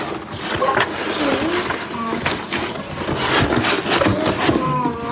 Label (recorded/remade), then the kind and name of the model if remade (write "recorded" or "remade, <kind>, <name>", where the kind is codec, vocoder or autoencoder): recorded